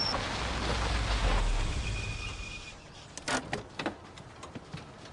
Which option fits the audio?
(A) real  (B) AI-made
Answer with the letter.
A